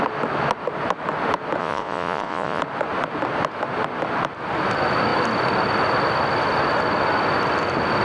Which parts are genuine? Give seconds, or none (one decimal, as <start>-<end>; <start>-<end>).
0.0-1.6; 2.6-8.0